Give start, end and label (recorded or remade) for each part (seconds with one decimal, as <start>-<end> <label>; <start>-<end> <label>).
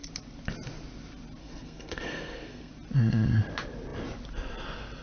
0.0-1.4 recorded; 1.4-2.7 remade; 2.7-5.0 recorded